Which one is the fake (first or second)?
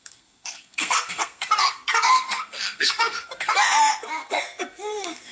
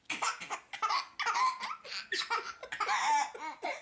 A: first